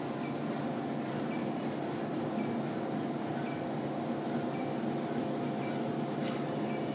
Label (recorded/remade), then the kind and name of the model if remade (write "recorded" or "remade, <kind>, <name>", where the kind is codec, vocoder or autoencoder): recorded